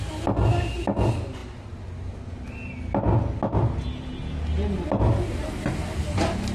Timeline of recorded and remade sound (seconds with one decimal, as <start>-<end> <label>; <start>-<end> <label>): 0.0-6.5 recorded